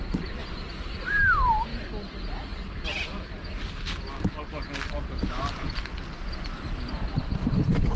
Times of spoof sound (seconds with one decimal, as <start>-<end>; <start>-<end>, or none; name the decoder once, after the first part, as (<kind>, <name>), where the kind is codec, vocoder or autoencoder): 0.0-1.7 (vocoder, BigVGAN v2); 6.3-8.0